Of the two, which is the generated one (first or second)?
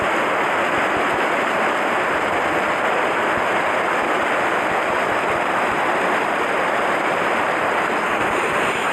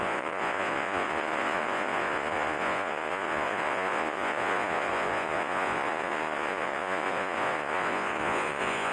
second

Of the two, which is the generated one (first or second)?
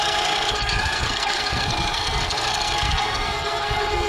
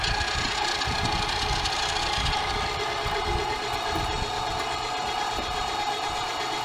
first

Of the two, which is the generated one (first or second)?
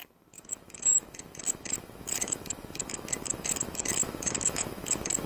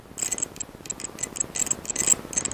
first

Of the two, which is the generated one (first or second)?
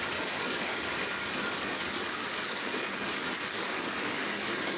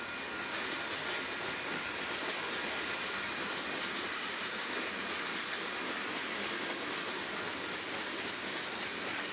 first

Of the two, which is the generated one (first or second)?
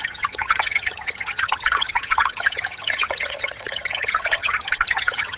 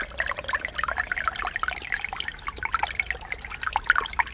first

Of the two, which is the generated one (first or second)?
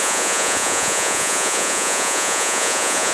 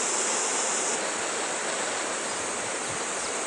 first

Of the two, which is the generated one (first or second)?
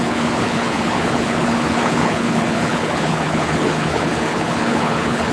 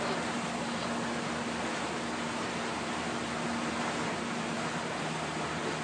first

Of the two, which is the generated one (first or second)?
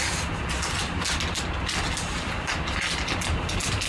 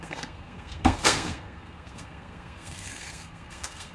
second